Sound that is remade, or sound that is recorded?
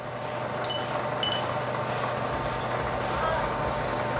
recorded